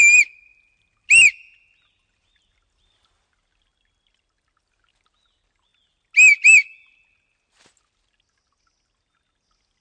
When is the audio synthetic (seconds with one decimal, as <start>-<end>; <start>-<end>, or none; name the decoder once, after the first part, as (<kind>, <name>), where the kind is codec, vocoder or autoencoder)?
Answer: none